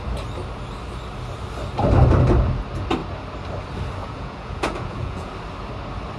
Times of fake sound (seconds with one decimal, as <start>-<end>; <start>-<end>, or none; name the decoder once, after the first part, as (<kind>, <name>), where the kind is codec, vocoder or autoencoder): 4.0-5.3 (vocoder, Vocos)